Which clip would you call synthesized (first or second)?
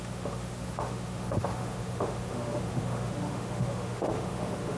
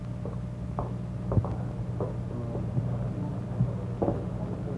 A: first